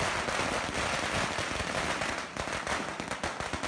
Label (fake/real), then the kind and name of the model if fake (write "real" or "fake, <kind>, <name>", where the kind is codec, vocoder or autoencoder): real